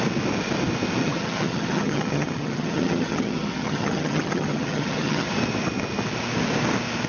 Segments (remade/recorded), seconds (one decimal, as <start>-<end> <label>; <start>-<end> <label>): 0.0-1.0 recorded; 1.0-5.3 remade; 5.3-7.1 recorded